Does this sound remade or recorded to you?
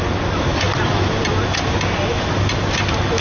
recorded